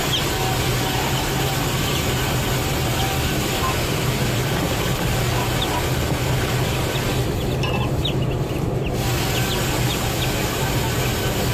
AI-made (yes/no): no